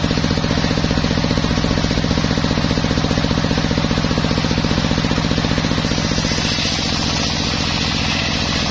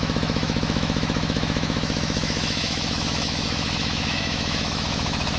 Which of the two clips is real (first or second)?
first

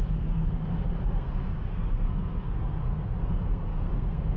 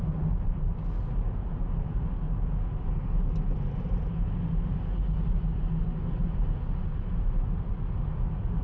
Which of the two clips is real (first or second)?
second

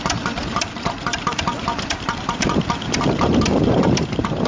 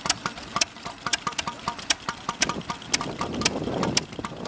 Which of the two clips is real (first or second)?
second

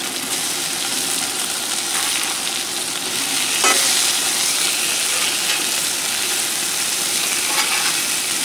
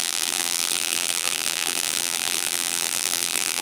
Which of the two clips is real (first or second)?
first